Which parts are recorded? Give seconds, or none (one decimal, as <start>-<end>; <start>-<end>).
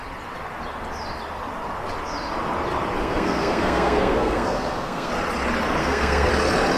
0.0-3.0; 5.1-5.8; 6.3-6.8